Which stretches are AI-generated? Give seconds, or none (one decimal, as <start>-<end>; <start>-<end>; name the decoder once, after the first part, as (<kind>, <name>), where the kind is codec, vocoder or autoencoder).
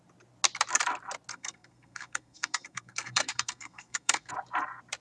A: 1.3-4.3 (codec, SNAC)